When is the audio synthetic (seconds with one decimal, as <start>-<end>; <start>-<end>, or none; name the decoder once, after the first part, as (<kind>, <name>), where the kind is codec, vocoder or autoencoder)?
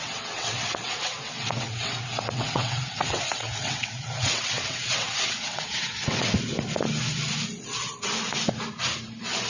0.0-6.5 (vocoder, WaveNeXt)